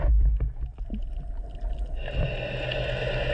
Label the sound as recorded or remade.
recorded